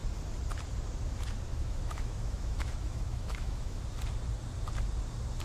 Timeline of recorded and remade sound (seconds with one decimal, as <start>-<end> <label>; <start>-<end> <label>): 0.0-1.5 recorded; 1.5-3.8 remade; 3.8-5.4 recorded